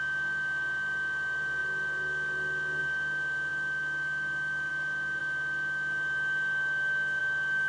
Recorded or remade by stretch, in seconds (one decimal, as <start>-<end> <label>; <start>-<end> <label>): 0.0-7.7 recorded